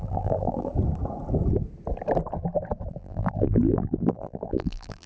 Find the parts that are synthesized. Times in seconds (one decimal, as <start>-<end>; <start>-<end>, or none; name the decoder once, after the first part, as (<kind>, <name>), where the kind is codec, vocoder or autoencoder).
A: 0.0-0.7 (vocoder, BigVGAN v2); 2.9-5.1